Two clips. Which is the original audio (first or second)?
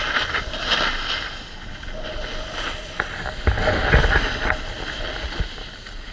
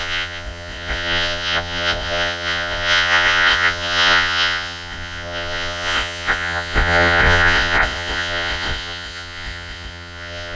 first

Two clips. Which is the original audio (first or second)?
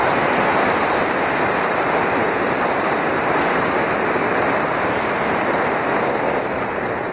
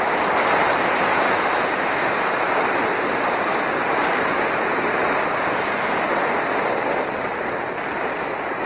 second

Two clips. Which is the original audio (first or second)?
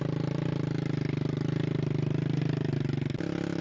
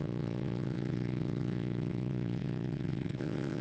first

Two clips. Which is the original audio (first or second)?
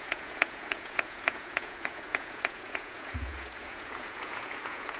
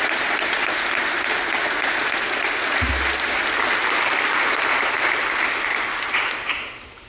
second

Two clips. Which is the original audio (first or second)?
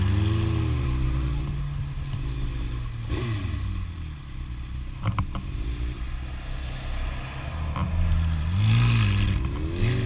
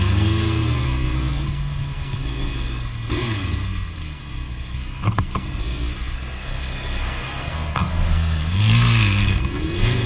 first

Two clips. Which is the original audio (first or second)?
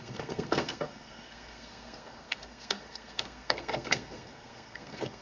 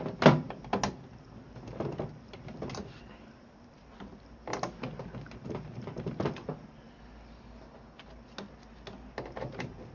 second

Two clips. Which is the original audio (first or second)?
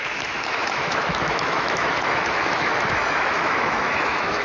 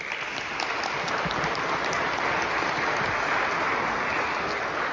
second